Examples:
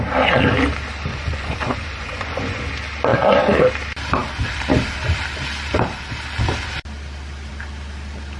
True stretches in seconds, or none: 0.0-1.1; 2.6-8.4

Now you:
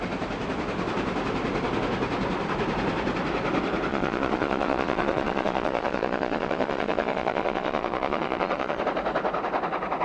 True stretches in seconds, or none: 0.0-3.9; 8.8-10.0

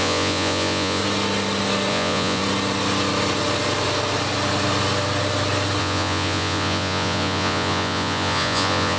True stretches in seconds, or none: 1.0-1.9; 2.4-5.8

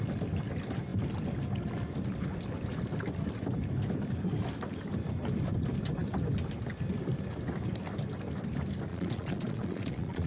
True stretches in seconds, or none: 0.0-8.9

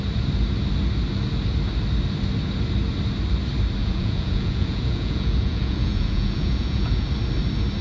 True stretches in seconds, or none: 0.0-3.8; 7.1-7.8

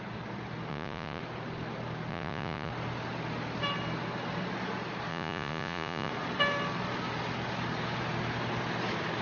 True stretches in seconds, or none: 0.0-0.7; 1.2-2.1; 2.7-5.1; 6.1-9.2

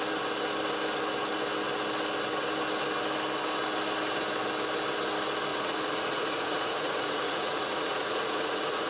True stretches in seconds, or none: 0.0-5.5

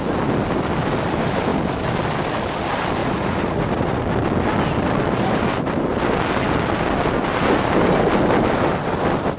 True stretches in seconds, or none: 0.0-3.0; 4.0-9.4